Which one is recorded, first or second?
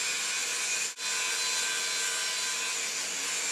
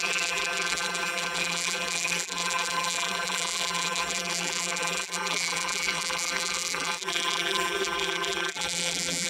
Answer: first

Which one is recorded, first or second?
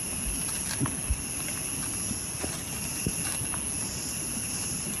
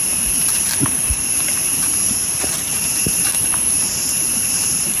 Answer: first